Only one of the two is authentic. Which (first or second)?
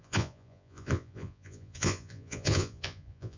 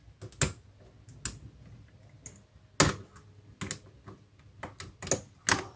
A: second